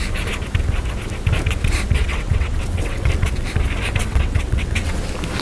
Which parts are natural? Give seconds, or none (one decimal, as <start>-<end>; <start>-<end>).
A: 0.0-2.0; 3.1-4.0; 4.9-5.4